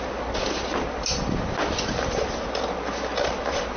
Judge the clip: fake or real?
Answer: real